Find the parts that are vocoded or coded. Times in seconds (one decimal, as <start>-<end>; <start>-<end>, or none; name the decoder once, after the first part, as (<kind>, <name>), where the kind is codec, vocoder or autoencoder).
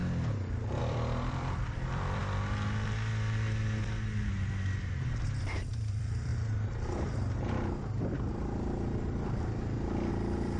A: 0.8-2.2 (vocoder, BigVGAN v2); 5.7-6.3; 10.1-10.6